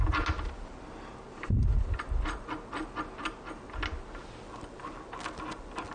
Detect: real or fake real